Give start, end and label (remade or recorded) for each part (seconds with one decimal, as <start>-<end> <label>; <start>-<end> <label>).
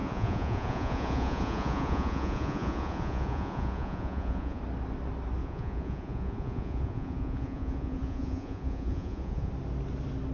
0.0-4.6 remade; 4.6-5.4 recorded; 5.4-9.5 remade; 9.5-10.3 recorded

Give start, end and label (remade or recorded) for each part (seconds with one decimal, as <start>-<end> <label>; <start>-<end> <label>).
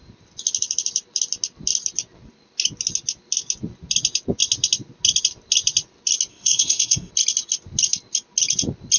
0.0-6.3 recorded; 6.3-7.1 remade; 7.1-9.0 recorded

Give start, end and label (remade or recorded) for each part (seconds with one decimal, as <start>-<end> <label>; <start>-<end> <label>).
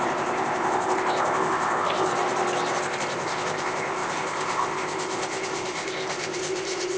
0.0-2.1 remade; 2.1-2.8 recorded; 2.8-7.0 remade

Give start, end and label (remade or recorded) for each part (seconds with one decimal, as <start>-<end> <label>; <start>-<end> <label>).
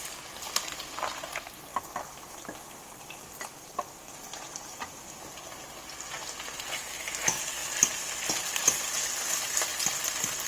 0.0-1.7 recorded; 1.7-5.2 remade; 5.2-9.7 recorded; 9.7-10.5 remade